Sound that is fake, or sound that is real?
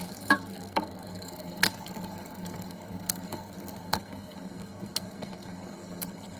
fake